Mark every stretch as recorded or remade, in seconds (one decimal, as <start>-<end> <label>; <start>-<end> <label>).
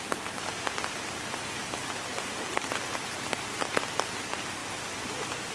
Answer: 0.0-5.5 recorded